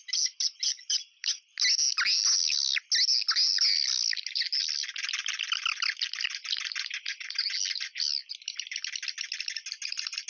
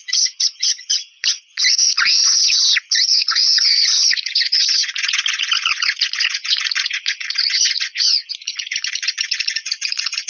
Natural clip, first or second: first